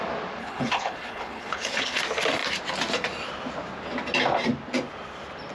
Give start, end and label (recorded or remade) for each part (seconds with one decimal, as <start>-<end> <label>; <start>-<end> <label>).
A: 0.0-0.4 recorded; 0.4-2.0 remade; 2.0-5.5 recorded